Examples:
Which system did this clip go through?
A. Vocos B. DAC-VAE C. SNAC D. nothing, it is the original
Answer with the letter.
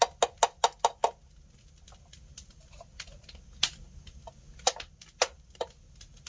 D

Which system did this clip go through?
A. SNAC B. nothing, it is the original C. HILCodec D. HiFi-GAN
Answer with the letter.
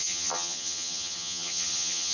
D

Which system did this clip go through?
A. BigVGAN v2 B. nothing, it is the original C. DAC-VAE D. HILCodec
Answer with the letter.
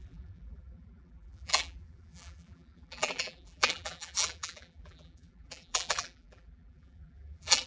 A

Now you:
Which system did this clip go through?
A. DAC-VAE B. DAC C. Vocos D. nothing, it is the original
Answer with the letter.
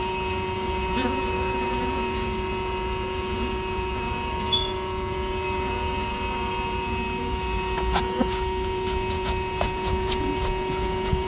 C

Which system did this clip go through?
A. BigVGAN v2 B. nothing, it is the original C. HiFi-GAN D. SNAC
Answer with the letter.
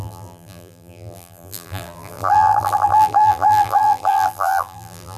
A